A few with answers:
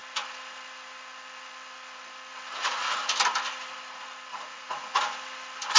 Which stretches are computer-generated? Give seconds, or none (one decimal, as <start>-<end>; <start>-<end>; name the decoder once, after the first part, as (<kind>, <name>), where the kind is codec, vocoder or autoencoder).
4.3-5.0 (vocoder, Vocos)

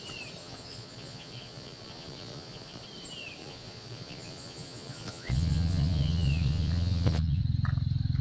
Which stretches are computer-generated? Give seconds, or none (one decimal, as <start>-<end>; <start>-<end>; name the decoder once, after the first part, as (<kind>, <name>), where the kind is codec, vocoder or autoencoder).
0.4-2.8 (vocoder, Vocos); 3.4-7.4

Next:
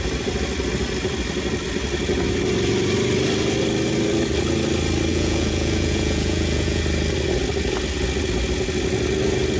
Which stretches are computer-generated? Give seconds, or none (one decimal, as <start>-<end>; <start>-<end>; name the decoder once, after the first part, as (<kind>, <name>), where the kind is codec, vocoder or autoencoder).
5.1-6.8 (vocoder, Vocos)

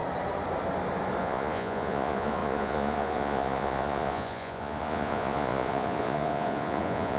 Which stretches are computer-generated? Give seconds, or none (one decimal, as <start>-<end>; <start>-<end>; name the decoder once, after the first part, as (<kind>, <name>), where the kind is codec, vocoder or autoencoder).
1.2-7.2 (vocoder, Vocos)

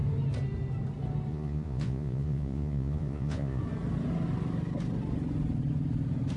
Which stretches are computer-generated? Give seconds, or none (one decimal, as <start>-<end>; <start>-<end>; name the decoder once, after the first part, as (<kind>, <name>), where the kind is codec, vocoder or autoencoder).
1.3-3.6 (vocoder, Vocos)

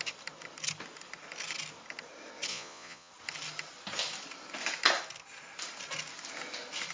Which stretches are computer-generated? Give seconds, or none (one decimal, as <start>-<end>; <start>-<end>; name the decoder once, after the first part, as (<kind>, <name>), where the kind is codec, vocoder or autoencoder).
2.5-3.1 (vocoder, Vocos)

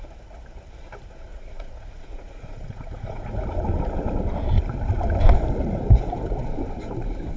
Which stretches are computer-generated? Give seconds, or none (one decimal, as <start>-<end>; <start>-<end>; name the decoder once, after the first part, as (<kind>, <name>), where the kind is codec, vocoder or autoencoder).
1.3-3.5 (vocoder, Vocos)

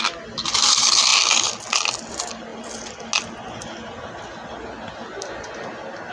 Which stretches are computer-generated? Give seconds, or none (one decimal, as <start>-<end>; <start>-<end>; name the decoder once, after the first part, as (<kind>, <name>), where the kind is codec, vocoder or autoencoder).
none